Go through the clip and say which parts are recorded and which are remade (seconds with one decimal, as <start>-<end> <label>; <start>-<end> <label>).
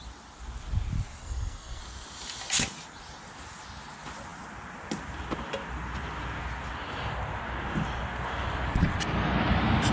0.0-1.2 recorded; 1.2-1.8 remade; 1.8-9.9 recorded